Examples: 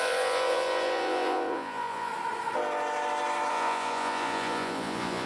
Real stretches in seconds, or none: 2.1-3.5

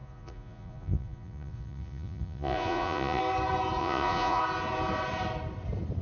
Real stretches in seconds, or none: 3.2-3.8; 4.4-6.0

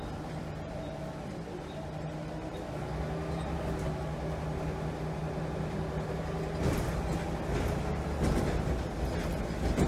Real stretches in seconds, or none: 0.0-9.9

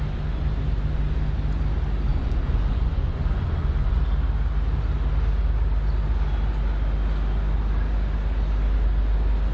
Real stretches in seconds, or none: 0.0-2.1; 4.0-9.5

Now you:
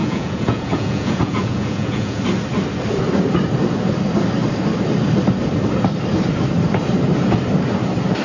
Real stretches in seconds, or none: 2.2-8.2

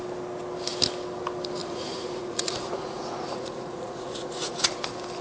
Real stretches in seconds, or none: 0.0-1.6; 4.7-5.2

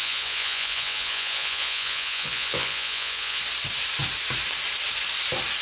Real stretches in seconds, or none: 3.4-5.6